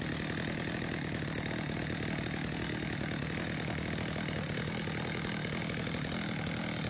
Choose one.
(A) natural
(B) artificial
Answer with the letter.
A